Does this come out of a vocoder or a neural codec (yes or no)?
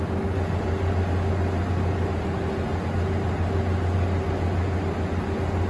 no